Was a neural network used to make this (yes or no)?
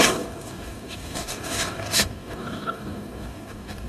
yes